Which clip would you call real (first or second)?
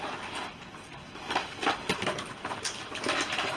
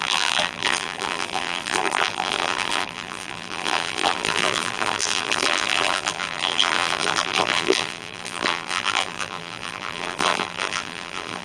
first